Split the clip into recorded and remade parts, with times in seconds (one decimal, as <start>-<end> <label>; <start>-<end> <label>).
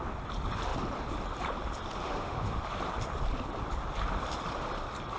0.0-2.0 recorded; 2.0-2.6 remade; 2.6-5.2 recorded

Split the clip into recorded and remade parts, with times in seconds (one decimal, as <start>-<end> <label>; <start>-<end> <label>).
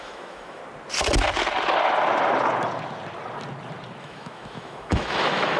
0.0-0.6 remade; 0.6-4.0 recorded; 4.0-5.6 remade